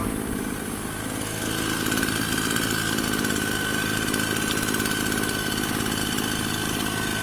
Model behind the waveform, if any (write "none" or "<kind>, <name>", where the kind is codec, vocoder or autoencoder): none